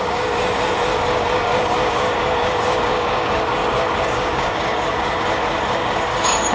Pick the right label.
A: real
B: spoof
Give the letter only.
B